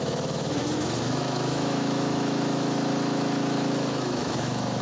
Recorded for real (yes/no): no